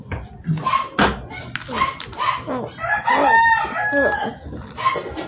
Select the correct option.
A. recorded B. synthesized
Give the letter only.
A